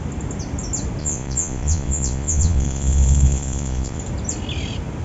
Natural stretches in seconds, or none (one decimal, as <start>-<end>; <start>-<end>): 0.0-1.0; 4.0-5.0